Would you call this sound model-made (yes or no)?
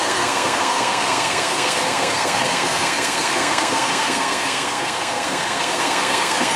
yes